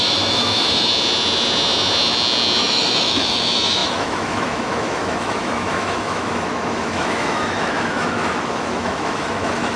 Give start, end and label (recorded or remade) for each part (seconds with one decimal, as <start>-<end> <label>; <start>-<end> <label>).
0.0-0.9 remade; 0.9-2.6 recorded; 2.6-9.8 remade